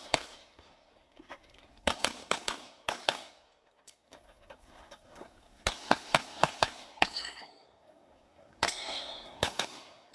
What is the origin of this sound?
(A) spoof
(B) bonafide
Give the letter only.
A